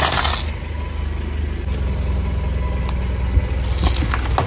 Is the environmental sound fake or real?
real